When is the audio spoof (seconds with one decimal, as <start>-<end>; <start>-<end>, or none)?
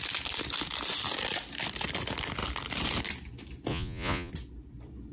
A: 3.7-4.3